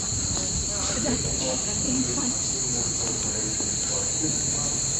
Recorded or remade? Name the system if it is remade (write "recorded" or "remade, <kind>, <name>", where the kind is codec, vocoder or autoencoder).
recorded